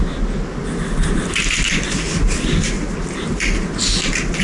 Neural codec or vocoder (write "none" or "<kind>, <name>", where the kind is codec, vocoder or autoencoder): none